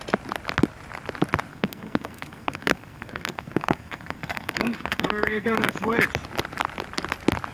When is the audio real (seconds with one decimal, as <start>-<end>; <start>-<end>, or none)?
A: 0.0-1.5; 6.0-7.5